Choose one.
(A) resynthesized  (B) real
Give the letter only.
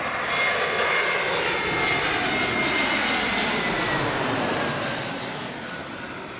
B